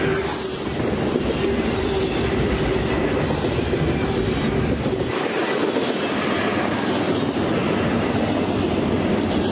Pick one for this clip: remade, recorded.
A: recorded